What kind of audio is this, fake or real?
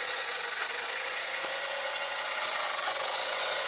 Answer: fake